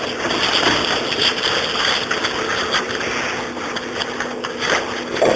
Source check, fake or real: real